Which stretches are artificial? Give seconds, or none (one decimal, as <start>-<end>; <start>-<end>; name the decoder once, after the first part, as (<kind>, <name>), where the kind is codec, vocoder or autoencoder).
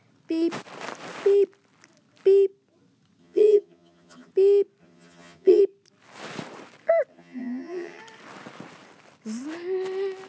3.2-4.3 (vocoder, HiFi-GAN); 4.8-5.6; 7.1-8.0